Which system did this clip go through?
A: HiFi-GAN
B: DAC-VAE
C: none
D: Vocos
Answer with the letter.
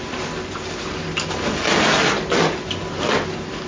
C